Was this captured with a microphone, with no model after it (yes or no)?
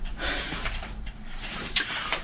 no